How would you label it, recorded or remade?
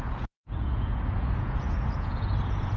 remade